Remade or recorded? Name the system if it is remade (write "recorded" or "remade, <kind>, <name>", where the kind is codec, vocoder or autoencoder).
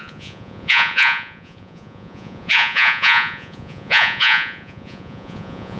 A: remade, vocoder, Vocos